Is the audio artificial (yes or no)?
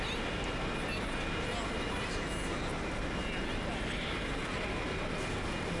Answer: no